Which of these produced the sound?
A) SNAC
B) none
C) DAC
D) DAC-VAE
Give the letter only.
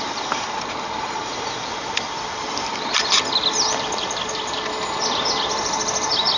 B